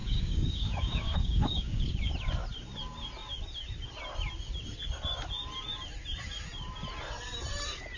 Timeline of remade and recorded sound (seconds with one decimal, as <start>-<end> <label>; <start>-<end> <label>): 0.0-1.9 remade; 1.9-8.0 recorded